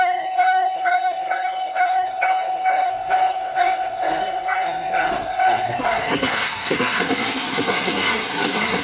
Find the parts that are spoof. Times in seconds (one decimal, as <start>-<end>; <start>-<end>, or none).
0.0-8.8